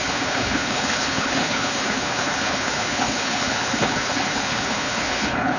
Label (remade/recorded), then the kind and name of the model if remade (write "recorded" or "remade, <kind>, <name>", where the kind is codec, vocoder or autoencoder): remade, codec, HILCodec